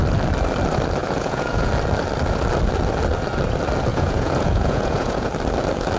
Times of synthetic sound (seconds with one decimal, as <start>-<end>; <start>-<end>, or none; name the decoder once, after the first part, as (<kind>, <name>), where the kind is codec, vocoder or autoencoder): 1.0-1.7 (vocoder, Vocos); 3.9-5.3